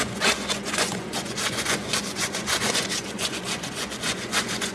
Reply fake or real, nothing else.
fake